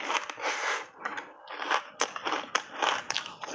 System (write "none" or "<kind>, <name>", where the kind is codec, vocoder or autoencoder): none